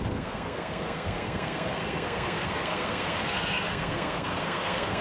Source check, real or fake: fake